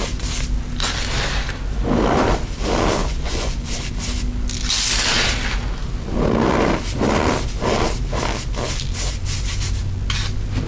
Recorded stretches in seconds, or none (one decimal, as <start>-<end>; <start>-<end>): 0.0-3.0; 3.7-10.7